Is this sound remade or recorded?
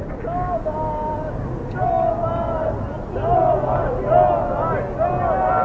recorded